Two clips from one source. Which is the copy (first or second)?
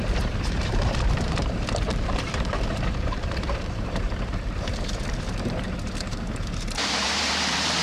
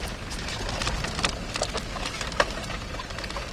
first